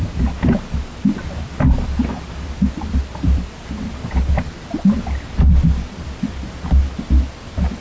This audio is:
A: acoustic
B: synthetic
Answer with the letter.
A